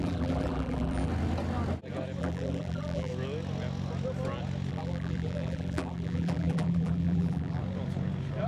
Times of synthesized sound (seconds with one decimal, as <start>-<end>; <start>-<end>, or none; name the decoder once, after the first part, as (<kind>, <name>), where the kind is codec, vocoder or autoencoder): 0.0-1.1 (vocoder, BigVGAN v2); 2.2-3.1; 4.7-7.6